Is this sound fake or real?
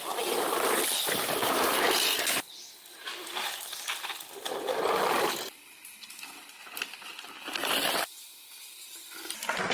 real